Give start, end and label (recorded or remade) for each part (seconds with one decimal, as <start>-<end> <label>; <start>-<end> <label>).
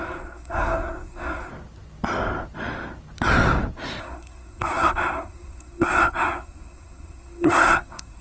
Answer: 0.0-1.5 remade; 1.5-4.0 recorded; 4.0-8.2 remade